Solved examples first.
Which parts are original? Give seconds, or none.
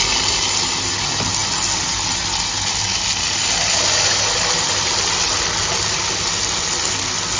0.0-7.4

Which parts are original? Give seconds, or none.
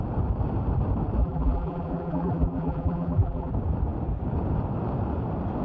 0.0-1.2; 3.5-5.6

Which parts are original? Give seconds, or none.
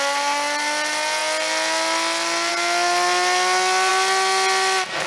0.0-5.1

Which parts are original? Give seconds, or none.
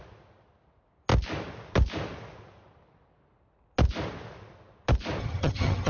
0.0-5.2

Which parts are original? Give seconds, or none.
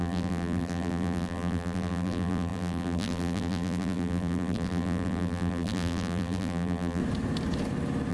7.0-8.1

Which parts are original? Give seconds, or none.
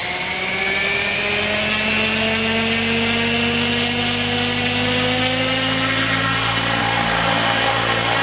0.0-8.2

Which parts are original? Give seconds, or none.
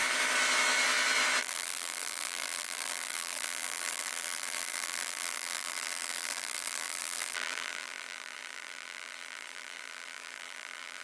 0.0-1.4